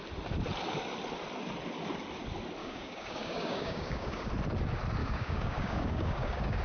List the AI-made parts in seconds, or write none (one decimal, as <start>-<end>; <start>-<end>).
2.6-4.3; 5.0-6.6